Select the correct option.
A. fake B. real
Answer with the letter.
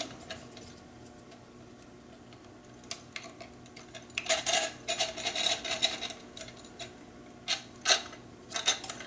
B